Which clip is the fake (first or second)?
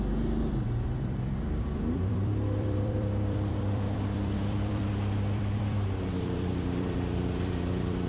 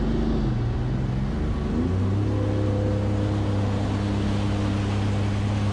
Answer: first